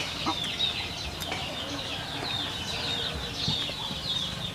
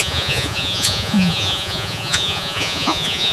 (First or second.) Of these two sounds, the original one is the first